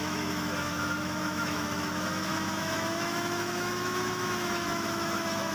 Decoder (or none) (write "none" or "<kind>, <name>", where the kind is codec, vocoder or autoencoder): autoencoder, DAC-VAE